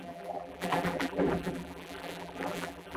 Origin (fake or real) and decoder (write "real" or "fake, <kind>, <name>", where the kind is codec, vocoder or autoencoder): fake, vocoder, BigVGAN v2